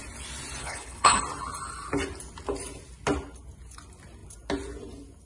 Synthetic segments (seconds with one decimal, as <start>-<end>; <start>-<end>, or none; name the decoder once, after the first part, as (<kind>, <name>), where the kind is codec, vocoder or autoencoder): 0.6-1.2 (codec, HILCodec)